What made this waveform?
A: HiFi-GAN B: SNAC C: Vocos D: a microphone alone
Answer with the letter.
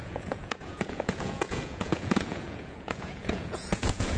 C